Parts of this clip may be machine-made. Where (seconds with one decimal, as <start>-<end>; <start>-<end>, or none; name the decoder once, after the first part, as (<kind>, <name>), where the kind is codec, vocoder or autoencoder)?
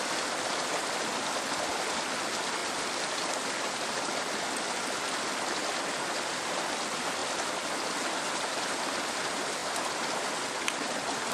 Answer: none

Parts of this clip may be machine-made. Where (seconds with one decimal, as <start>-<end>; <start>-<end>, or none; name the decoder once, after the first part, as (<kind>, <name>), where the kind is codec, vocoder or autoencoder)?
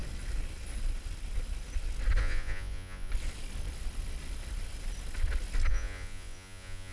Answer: 2.2-3.1 (vocoder, Vocos); 5.7-6.9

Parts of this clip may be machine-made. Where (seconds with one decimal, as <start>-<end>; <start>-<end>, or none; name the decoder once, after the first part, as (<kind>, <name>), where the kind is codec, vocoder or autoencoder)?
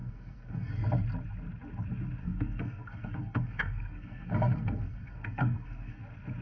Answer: 0.0-0.7 (codec, SNAC); 2.2-6.0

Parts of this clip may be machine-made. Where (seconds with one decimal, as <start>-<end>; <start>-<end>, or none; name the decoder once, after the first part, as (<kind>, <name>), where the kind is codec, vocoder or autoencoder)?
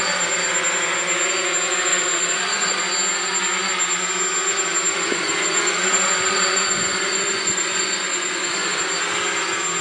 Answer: 1.9-2.8 (vocoder, Vocos); 4.9-8.8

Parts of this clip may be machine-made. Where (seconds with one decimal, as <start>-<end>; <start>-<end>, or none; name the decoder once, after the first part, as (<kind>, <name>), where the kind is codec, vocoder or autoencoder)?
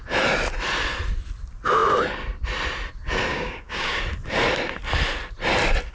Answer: 3.3-4.0 (codec, DAC)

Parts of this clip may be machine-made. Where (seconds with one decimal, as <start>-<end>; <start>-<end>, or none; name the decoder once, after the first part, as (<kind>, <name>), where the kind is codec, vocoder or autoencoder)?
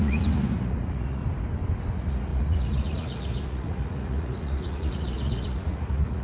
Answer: 0.0-1.2 (vocoder, Vocos); 1.9-6.2